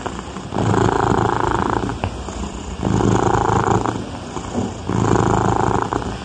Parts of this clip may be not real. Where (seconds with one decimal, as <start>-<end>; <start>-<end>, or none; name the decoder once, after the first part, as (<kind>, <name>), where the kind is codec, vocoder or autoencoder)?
none

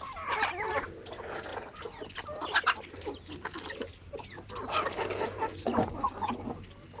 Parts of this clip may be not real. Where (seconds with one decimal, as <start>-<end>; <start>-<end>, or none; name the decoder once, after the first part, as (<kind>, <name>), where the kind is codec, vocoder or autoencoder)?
5.5-6.3 (vocoder, Vocos)

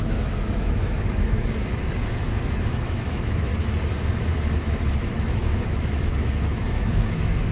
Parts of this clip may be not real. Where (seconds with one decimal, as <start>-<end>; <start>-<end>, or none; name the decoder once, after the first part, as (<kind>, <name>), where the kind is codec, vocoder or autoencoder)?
0.0-3.5 (autoencoder, DAC-VAE); 4.2-7.5

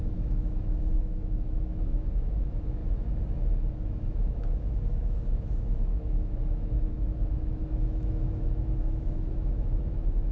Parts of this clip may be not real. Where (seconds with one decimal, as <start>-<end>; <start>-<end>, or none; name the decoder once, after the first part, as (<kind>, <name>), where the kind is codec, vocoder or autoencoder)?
0.0-2.8 (autoencoder, DAC-VAE); 3.7-10.3

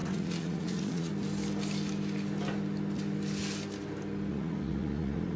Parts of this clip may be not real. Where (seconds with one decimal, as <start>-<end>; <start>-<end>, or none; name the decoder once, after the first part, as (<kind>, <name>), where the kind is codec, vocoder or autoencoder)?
0.0-1.1 (vocoder, Vocos); 4.3-5.4

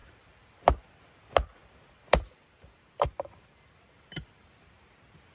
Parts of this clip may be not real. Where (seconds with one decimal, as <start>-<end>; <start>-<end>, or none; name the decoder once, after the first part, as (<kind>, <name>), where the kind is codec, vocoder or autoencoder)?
0.0-0.8 (vocoder, BigVGAN v2); 1.6-4.8

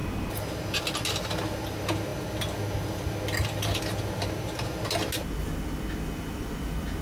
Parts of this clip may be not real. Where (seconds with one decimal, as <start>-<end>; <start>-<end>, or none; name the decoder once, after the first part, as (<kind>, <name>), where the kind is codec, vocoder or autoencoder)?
none